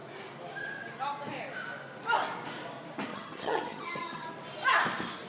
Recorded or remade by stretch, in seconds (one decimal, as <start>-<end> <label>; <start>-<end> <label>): 0.0-3.1 recorded; 3.1-4.3 remade; 4.3-5.3 recorded

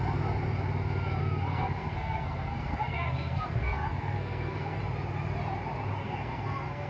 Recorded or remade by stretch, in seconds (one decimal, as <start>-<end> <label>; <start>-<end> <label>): 0.0-1.2 recorded; 1.2-4.8 remade; 4.8-6.0 recorded; 6.0-6.9 remade